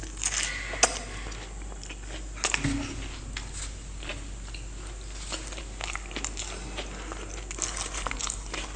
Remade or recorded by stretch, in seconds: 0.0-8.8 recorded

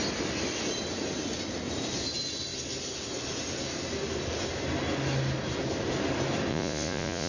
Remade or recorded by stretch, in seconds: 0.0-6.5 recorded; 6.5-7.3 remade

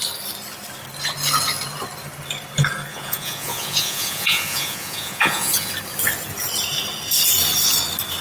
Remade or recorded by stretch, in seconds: 0.0-2.9 recorded; 2.9-5.7 remade; 5.7-8.2 recorded

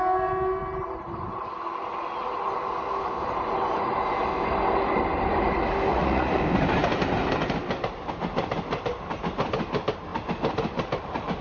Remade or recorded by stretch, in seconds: 0.0-5.9 recorded; 5.9-6.4 remade; 6.4-11.4 recorded

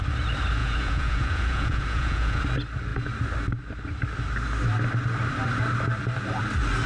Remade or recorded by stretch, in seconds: 0.0-0.6 recorded; 0.6-2.4 remade; 2.4-6.9 recorded

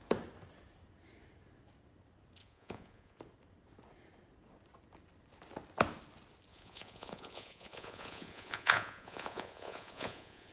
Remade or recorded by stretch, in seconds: 0.0-2.4 recorded; 2.4-3.2 remade; 3.2-6.5 recorded; 6.5-10.5 remade

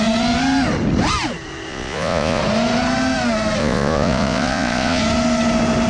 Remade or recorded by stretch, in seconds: 0.0-1.7 recorded; 1.7-2.4 remade; 2.4-3.6 recorded; 3.6-5.0 remade; 5.0-5.9 recorded